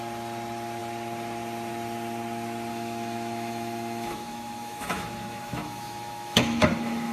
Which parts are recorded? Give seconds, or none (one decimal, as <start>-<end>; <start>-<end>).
0.0-2.7